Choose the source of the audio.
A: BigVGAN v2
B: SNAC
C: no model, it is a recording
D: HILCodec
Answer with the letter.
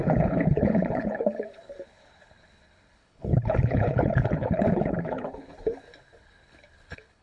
D